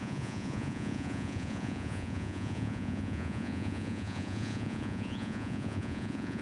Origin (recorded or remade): remade